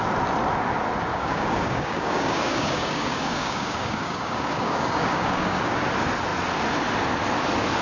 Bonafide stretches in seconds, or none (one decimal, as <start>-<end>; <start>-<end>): 0.0-1.1; 5.8-7.8